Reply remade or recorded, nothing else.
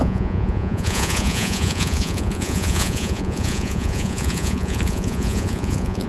remade